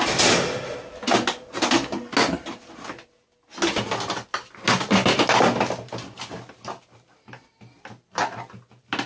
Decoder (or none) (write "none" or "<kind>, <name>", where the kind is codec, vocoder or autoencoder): none